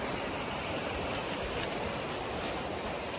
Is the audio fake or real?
real